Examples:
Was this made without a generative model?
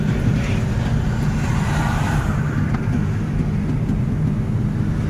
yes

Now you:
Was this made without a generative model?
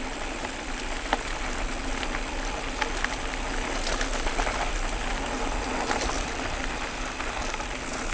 yes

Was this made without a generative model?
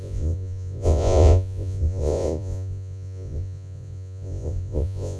no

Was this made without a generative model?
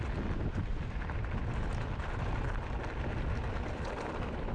yes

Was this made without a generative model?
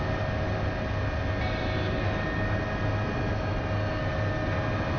yes